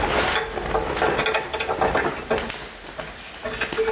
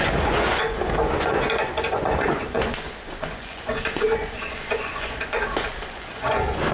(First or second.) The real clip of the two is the first